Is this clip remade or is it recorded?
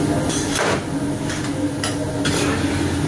recorded